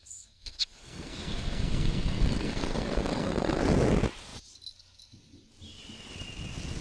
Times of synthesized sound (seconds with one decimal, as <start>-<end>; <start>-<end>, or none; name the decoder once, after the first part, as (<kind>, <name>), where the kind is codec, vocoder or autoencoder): 0.0-3.6 (codec, SNAC)